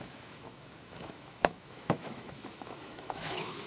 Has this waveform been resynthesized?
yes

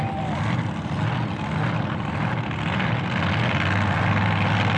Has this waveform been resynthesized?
no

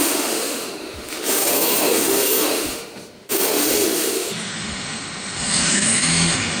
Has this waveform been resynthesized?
yes